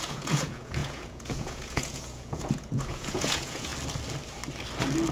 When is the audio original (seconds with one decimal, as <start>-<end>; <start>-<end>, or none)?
3.7-5.1